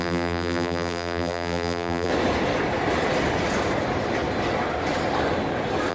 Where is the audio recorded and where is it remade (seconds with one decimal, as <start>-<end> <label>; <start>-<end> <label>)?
0.0-2.1 remade; 2.1-5.9 recorded